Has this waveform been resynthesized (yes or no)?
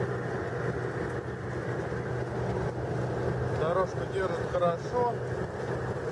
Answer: no